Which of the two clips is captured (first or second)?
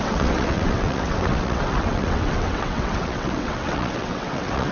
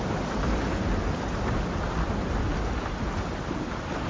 second